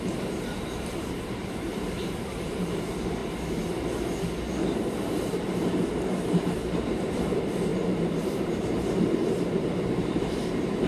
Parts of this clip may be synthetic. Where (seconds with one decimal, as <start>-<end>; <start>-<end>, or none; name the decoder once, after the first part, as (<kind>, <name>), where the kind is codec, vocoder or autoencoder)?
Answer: 0.0-3.2 (vocoder, BigVGAN v2); 4.9-10.9